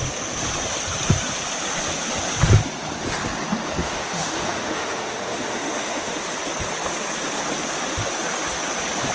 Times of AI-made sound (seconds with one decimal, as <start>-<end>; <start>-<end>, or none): 3.8-6.1